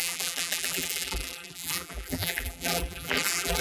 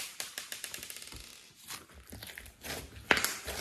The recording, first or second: second